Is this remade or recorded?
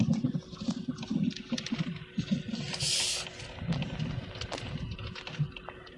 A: recorded